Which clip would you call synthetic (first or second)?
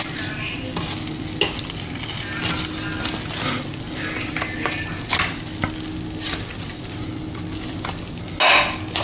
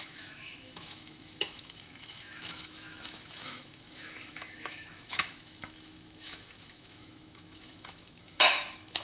second